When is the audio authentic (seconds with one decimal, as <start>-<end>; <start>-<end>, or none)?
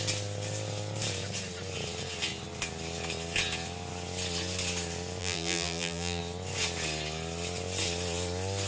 0.0-5.2; 6.2-8.7